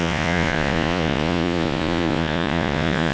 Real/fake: fake